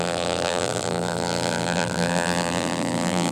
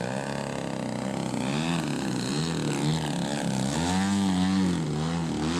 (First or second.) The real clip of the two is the second